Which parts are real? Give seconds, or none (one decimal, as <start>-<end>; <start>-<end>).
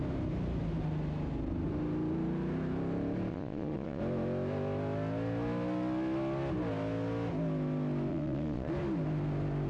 0.0-3.3; 4.0-8.1; 8.7-9.7